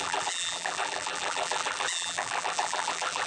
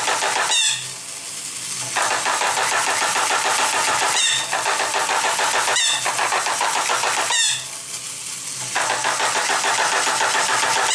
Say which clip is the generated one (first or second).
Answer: first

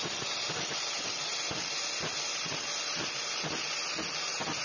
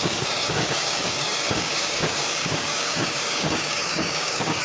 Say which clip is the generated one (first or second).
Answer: second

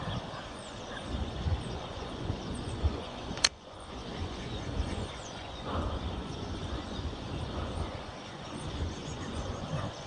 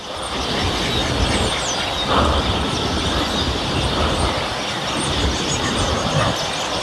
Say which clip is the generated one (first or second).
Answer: first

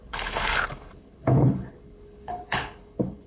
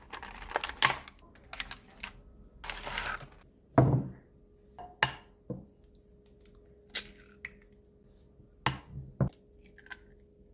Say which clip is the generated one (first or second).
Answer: first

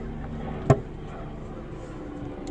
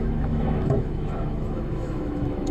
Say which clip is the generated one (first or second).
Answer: second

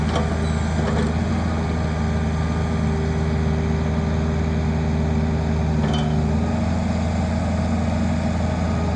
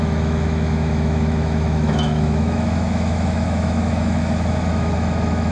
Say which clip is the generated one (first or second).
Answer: second